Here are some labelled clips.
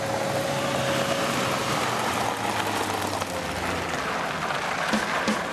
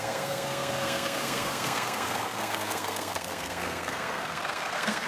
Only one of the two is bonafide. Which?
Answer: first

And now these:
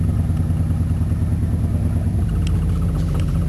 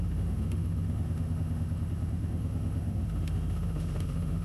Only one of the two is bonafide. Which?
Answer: first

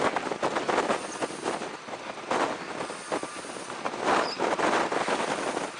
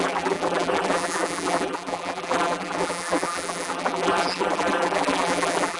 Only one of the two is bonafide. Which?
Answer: first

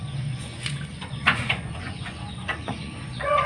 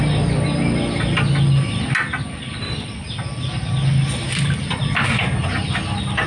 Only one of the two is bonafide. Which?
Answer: second